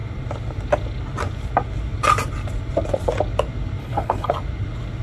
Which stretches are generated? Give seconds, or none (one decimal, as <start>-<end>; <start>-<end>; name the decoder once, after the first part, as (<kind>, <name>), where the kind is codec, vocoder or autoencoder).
3.8-4.3 (codec, HILCodec)

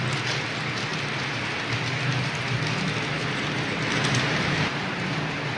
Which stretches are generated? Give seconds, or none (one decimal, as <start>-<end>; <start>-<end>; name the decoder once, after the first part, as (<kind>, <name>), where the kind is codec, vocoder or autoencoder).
0.9-1.6 (vocoder, BigVGAN v2); 3.2-5.0

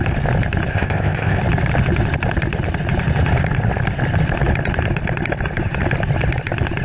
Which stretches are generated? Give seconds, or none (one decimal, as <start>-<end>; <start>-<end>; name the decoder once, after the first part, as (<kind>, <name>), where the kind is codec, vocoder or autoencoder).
0.7-1.4 (codec, ZipCodec)